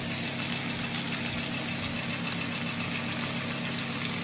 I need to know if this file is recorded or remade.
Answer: recorded